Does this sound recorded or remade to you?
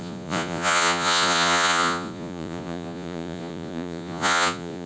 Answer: remade